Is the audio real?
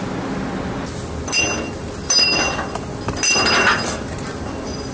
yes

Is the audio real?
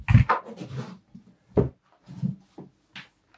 yes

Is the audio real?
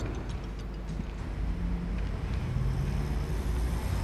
yes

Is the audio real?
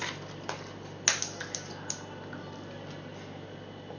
yes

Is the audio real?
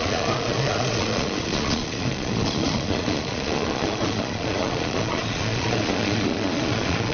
no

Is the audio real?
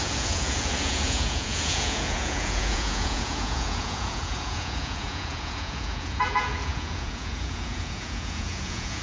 no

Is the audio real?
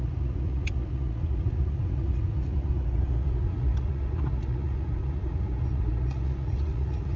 no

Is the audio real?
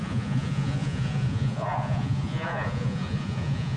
no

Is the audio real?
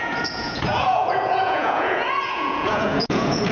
no